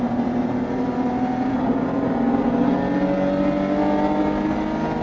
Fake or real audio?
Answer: real